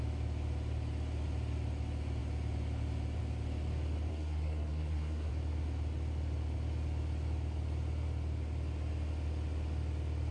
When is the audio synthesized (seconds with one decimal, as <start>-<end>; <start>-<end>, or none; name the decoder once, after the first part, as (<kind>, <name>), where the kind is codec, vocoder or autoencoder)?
4.1-5.3 (codec, SNAC)